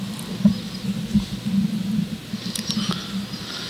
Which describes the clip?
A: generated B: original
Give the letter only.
B